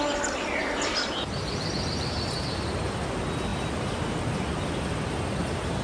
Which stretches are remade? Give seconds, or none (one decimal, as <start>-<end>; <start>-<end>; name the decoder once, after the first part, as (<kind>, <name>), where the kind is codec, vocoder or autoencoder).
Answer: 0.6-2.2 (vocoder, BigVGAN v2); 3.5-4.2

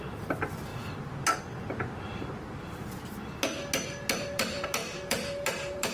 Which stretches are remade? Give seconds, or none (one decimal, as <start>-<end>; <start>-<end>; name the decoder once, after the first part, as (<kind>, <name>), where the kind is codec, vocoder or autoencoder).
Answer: 0.0-0.7 (vocoder, BigVGAN v2); 4.2-5.9

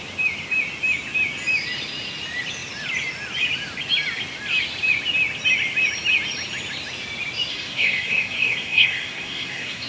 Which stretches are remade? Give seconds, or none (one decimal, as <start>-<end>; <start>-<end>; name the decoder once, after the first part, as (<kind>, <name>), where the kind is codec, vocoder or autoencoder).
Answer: 7.5-9.9 (codec, SNAC)

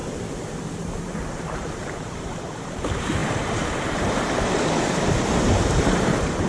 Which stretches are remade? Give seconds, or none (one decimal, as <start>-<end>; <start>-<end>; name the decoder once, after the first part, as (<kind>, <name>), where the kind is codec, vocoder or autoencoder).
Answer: 0.8-6.5 (vocoder, BigVGAN v2)

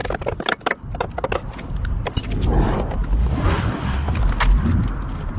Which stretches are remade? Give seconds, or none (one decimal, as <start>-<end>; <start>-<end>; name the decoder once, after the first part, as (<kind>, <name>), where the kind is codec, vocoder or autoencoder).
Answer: 3.0-3.6 (vocoder, BigVGAN v2)

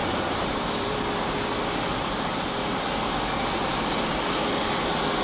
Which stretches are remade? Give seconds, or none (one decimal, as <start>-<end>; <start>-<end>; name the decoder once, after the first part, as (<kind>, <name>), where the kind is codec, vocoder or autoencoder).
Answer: 0.0-1.1 (vocoder, BigVGAN v2)

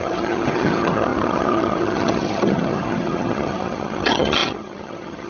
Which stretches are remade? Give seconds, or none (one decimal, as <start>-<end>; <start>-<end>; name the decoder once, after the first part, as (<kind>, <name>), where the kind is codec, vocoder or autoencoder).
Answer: 0.0-5.3 (vocoder, HiFi-GAN)

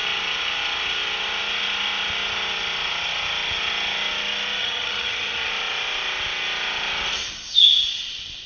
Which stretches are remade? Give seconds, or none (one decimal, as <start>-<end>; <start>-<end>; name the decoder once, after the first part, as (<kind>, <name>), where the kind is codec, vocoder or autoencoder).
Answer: 4.6-5.5 (vocoder, HiFi-GAN)